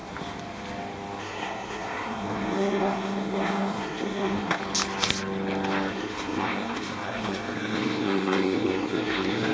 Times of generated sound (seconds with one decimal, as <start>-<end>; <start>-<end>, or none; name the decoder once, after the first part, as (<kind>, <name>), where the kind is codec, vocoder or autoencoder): 1.2-4.6 (codec, SNAC); 5.9-9.5